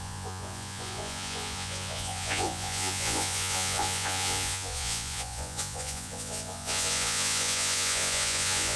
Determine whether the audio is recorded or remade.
remade